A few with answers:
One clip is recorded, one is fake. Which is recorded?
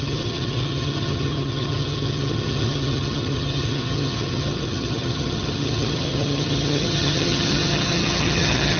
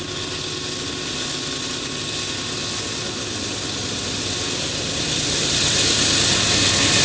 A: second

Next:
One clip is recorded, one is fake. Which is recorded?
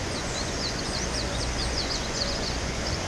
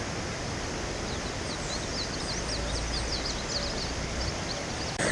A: second